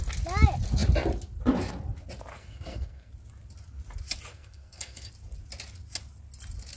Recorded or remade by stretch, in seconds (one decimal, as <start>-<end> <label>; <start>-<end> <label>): 0.0-2.3 recorded; 2.3-3.1 remade; 3.1-4.3 recorded; 4.3-5.1 remade; 5.1-6.8 recorded